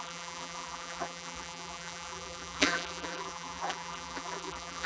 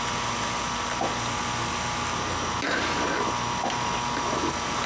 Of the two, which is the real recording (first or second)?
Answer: second